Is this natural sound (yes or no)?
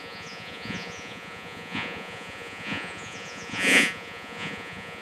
no